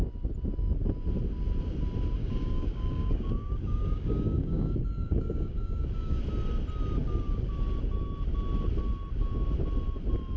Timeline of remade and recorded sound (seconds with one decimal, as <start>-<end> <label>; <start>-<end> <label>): 0.0-2.2 recorded; 2.2-6.2 remade; 6.2-7.0 recorded; 7.0-7.5 remade; 7.5-10.4 recorded